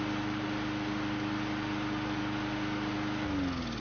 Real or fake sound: real